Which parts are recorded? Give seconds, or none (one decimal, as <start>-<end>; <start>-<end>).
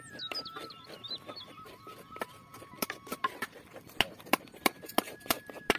0.0-5.8